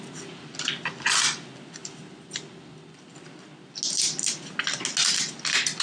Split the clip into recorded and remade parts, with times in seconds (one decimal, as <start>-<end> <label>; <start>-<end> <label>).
0.0-5.8 recorded

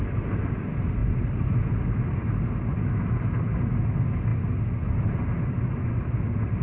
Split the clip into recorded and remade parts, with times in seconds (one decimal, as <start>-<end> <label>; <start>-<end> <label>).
0.0-6.6 recorded

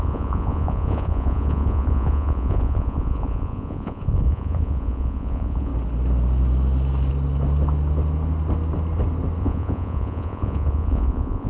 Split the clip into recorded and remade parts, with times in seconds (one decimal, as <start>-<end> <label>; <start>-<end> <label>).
0.0-5.7 remade; 5.7-9.4 recorded; 9.4-11.5 remade

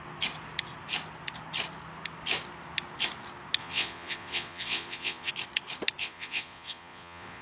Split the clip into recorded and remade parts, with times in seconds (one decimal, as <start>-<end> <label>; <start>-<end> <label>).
0.0-3.6 recorded; 3.6-5.3 remade; 5.3-6.0 recorded; 6.0-7.4 remade

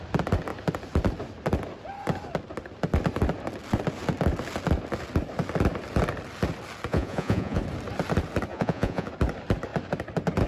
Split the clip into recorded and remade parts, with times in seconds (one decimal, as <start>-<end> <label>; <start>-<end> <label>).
0.0-6.9 recorded; 6.9-7.6 remade; 7.6-8.5 recorded; 8.5-9.1 remade; 9.1-10.5 recorded